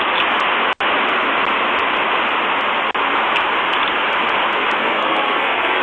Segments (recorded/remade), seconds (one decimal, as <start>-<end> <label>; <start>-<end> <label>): 0.0-4.8 recorded; 4.8-5.8 remade

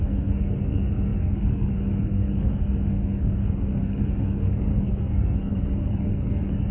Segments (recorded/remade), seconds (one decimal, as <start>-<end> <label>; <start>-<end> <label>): 0.0-6.7 remade

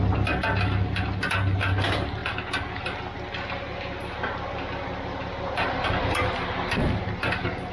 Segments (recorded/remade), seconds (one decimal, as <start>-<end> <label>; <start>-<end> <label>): 0.0-7.7 recorded

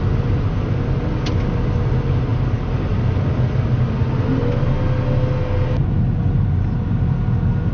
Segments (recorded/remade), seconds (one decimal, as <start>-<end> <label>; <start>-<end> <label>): 0.0-7.7 recorded

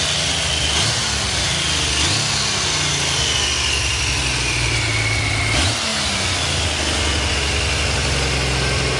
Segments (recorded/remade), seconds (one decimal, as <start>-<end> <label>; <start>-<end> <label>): 0.0-9.0 recorded

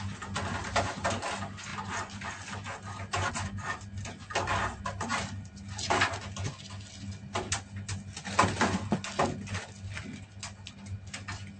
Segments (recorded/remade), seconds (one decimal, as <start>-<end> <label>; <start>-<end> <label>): 0.0-11.6 recorded